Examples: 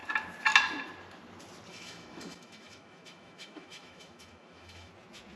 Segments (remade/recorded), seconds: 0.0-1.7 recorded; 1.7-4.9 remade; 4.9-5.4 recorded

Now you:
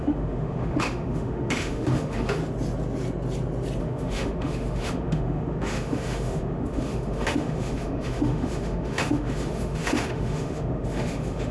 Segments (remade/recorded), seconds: 0.0-2.4 remade; 2.4-3.8 recorded; 3.8-11.5 remade